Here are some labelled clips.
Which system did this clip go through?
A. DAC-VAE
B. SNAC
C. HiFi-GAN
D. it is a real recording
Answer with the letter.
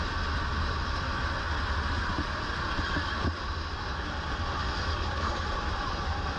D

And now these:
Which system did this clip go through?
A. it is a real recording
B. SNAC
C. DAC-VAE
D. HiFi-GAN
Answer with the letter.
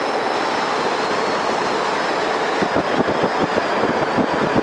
A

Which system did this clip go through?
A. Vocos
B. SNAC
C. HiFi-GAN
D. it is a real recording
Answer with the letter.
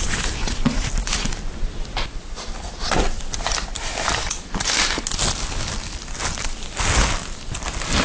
D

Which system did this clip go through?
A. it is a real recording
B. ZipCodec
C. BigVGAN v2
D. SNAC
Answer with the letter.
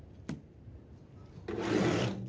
A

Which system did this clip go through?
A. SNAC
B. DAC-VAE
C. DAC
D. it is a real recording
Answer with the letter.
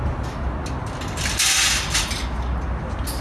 D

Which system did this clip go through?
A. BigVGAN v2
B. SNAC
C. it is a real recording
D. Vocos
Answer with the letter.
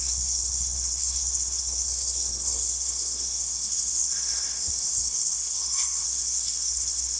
B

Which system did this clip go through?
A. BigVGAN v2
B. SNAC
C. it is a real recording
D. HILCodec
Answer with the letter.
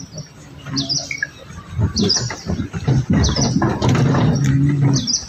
C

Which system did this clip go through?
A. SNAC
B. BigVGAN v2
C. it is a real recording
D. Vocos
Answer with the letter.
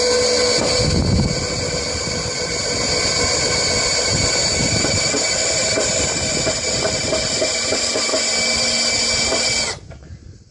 C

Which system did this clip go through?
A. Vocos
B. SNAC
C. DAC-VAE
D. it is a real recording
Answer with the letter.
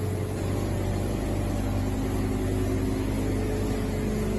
D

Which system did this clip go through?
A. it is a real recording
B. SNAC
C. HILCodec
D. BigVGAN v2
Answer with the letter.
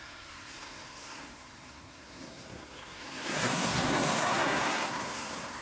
B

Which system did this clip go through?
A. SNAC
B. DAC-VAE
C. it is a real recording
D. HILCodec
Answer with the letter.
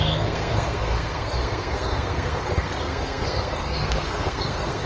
A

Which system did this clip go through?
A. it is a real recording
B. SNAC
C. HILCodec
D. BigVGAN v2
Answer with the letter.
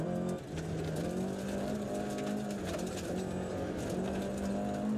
A